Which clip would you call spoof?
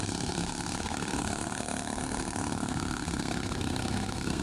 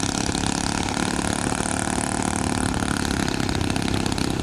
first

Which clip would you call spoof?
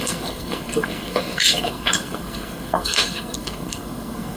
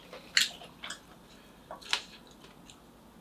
first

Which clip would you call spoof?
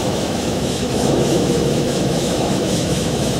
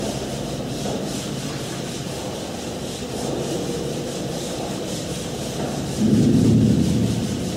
first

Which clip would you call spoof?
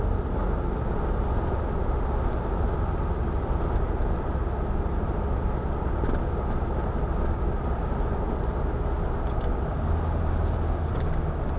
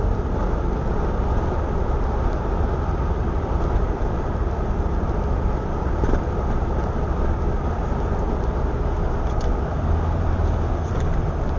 second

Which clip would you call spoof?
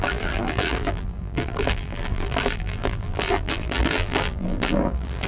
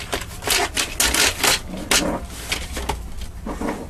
first